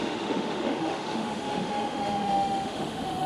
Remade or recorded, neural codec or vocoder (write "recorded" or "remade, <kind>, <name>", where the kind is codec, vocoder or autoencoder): remade, autoencoder, DAC-VAE